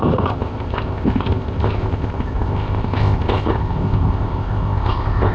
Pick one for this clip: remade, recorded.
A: remade